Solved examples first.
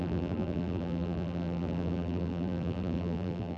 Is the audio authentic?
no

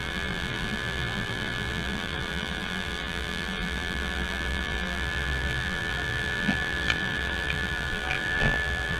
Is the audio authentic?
no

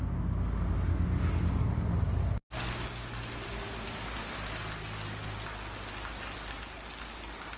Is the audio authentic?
yes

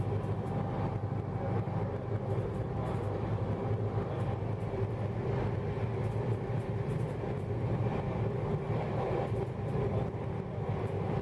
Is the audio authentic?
no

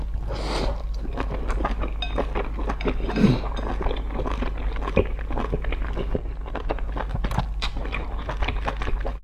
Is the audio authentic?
yes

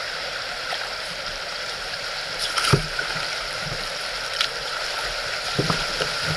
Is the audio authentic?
no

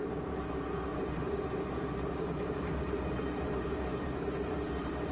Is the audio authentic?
no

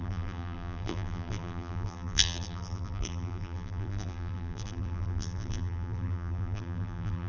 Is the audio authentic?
no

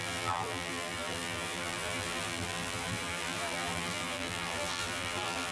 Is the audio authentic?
no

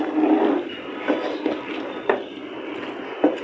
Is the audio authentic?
yes